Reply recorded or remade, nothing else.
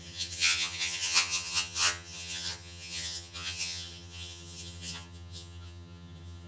remade